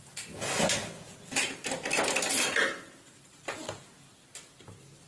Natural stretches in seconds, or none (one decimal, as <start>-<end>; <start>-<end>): 0.0-5.1